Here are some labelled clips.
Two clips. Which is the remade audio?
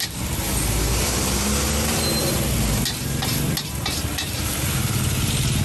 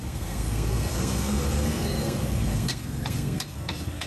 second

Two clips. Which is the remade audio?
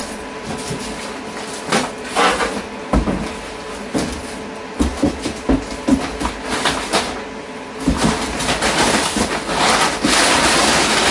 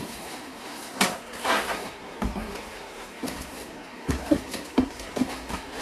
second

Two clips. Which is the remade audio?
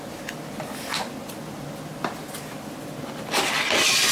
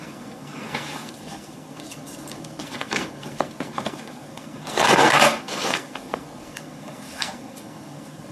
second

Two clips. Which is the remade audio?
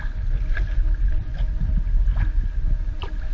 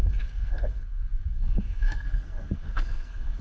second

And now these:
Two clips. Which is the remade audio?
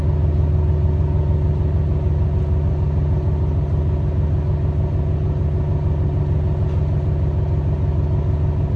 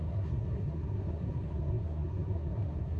second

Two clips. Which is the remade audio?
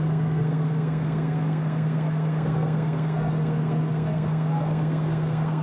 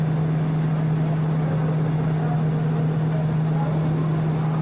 first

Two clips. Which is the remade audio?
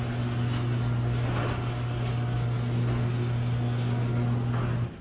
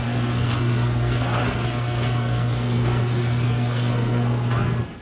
second